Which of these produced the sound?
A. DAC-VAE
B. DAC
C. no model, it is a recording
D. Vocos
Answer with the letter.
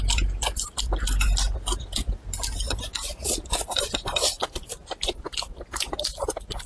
C